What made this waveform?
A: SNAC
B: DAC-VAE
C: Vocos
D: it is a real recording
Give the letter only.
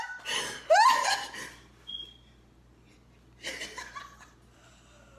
D